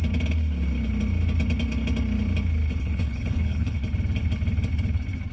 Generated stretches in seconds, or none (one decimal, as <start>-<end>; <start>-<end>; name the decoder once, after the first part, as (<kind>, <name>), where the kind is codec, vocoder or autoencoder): 2.8-3.8 (codec, HILCodec)